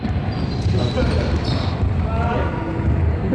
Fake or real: real